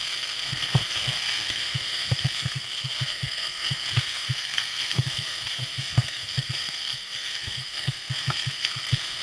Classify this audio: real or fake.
fake